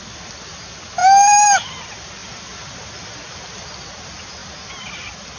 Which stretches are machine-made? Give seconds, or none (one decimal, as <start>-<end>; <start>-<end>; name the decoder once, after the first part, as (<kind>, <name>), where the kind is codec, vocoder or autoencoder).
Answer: 1.0-1.7 (vocoder, BigVGAN v2)